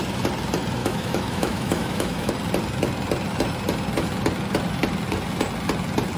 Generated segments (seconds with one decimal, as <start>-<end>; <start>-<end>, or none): 0.8-2.3